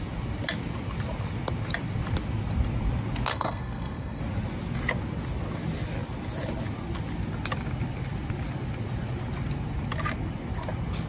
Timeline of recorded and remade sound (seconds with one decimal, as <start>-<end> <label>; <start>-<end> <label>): 0.0-3.3 recorded; 3.3-4.2 remade; 4.2-11.1 recorded